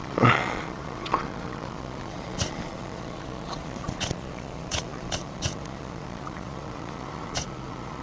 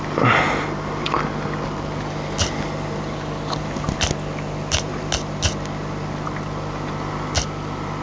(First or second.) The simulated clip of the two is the first